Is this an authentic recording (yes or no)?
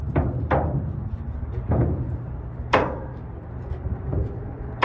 no